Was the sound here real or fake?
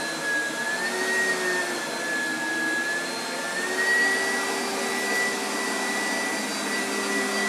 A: real